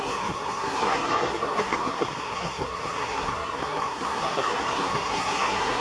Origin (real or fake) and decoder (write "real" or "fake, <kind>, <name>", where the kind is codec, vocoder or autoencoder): fake, codec, SNAC